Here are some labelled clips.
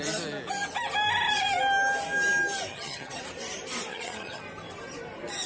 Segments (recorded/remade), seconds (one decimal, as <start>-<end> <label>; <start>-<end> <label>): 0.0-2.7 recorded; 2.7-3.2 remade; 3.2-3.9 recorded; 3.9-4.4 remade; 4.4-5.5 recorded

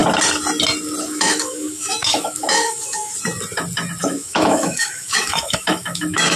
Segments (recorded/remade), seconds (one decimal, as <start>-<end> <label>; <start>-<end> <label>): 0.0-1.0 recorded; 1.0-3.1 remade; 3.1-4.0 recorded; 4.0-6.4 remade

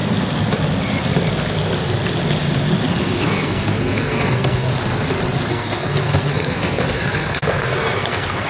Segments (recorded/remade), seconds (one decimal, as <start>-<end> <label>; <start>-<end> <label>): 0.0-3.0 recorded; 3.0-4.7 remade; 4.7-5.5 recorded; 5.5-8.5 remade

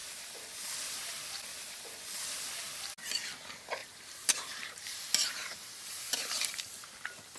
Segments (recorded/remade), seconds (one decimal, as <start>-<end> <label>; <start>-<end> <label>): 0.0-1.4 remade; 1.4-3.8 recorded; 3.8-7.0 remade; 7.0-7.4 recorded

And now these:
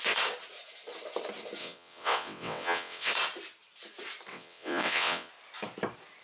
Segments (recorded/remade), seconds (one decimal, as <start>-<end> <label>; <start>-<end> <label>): 0.0-1.6 recorded; 1.6-3.1 remade; 3.1-4.3 recorded; 4.3-5.3 remade; 5.3-6.2 recorded